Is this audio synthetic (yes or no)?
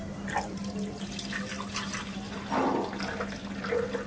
no